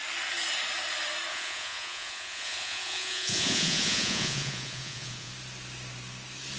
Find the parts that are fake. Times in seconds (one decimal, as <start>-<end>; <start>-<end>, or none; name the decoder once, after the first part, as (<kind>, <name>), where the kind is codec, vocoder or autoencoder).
1.3-5.3 (vocoder, Vocos)